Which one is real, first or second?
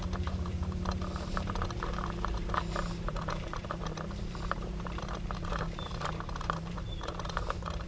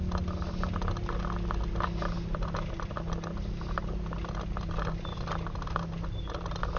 second